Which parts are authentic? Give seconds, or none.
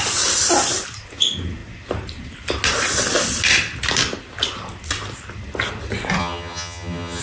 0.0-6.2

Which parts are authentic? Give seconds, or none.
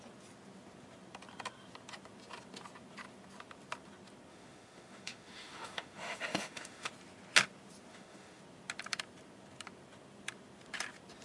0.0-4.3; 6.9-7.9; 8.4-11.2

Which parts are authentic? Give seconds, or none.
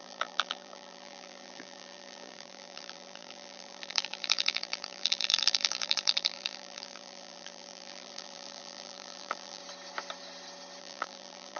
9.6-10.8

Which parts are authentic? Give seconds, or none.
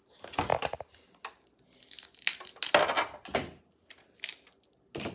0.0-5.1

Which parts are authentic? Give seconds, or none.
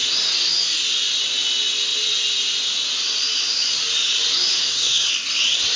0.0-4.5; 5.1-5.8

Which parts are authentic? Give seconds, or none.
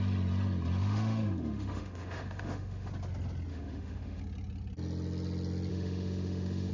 0.0-0.8; 2.9-3.5; 4.2-5.7